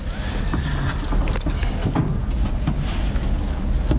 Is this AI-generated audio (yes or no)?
no